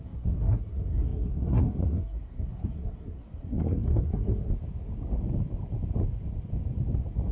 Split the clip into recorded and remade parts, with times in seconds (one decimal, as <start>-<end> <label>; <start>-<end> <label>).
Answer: 0.0-4.5 remade; 4.5-7.3 recorded